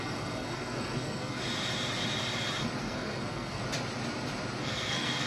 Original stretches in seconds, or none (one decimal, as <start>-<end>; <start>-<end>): 1.4-2.8; 3.6-4.6